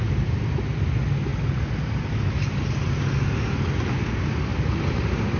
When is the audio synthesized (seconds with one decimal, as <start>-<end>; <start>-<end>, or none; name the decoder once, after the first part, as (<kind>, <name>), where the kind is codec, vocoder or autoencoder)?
none